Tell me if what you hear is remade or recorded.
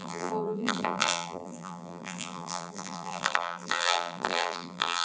remade